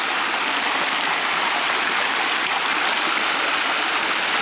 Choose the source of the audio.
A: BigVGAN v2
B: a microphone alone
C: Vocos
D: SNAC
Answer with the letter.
B